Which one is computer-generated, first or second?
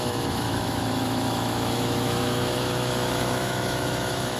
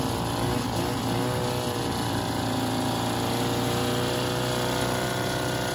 first